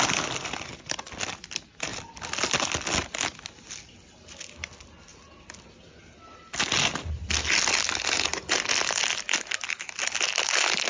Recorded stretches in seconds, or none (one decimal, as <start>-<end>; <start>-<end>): 0.0-10.9